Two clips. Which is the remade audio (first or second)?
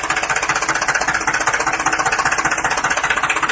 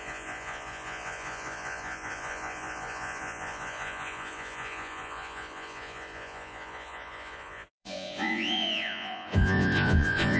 second